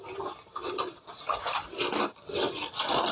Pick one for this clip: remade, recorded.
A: recorded